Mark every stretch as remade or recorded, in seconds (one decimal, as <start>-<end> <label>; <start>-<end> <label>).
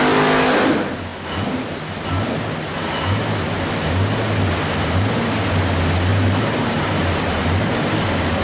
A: 0.0-6.1 recorded; 6.1-7.9 remade; 7.9-8.4 recorded